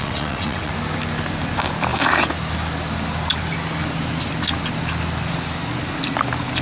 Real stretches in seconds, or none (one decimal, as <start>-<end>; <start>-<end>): 0.7-6.6